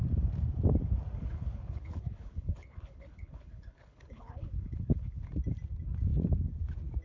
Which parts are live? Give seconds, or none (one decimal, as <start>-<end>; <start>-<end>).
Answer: 0.0-1.2; 5.3-7.0